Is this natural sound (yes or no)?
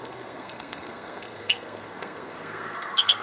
no